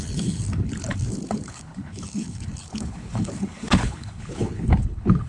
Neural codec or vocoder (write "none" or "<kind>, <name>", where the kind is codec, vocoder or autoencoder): codec, HILCodec